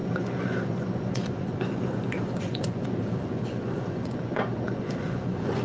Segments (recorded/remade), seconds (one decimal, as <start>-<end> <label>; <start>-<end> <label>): 0.0-5.6 remade